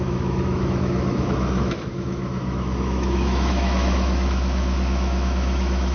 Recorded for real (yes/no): no